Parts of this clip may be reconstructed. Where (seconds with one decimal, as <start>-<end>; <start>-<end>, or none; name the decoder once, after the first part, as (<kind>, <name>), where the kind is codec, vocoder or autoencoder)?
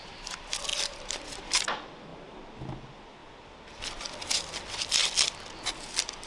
none